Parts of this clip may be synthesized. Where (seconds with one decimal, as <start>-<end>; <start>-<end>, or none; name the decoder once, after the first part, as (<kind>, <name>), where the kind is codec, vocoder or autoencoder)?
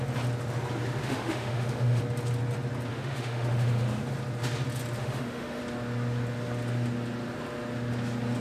1.0-2.0 (autoencoder, DAC-VAE); 2.9-4.0; 5.0-5.6